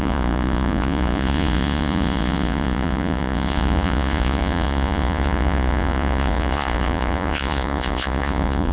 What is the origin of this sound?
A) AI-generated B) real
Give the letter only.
A